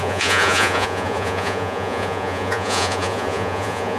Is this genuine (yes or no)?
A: no